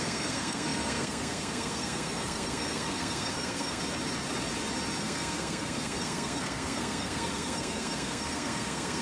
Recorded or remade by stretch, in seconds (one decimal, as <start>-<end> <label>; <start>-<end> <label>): 0.0-3.8 remade; 3.8-5.0 recorded; 5.0-9.0 remade

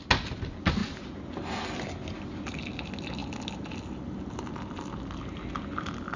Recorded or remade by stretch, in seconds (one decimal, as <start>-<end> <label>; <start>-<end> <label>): 0.0-6.2 recorded